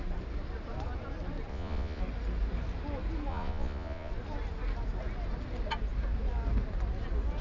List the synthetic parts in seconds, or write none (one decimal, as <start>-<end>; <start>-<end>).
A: 1.5-2.0; 3.3-4.1

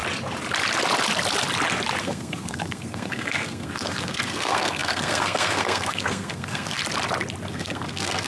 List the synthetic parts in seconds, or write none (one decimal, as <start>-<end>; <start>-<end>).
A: 2.0-6.8; 7.5-8.3